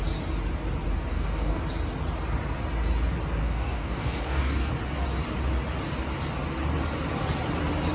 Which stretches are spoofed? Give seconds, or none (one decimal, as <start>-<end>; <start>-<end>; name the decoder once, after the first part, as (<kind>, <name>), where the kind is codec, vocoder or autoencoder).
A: 1.1-1.6 (codec, DAC); 3.4-4.7

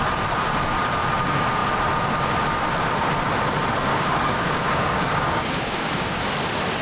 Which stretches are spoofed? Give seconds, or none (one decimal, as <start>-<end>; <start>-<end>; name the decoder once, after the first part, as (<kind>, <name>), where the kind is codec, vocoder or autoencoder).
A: 3.9-6.3 (codec, DAC)

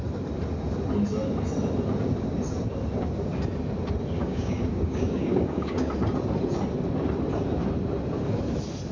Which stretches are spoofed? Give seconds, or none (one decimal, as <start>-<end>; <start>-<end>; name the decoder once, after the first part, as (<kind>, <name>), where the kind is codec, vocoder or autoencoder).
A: 4.2-5.9 (codec, DAC)

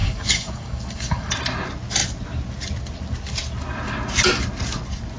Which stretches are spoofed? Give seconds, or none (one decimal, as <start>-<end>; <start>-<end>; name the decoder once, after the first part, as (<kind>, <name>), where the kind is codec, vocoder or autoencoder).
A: 0.0-1.3 (codec, DAC)

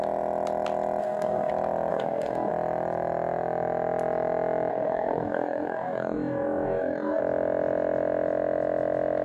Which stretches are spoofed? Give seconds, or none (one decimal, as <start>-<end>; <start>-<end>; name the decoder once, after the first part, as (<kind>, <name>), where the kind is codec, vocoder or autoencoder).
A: 1.0-1.5 (codec, DAC); 1.9-2.5; 4.7-7.2